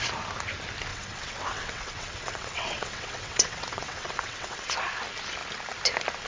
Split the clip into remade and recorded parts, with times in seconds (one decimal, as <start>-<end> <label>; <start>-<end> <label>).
0.0-0.9 recorded; 0.9-4.7 remade; 4.7-6.3 recorded